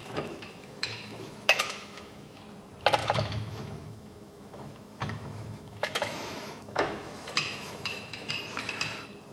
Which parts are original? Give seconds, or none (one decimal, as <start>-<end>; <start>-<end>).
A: 2.4-3.0; 8.3-9.3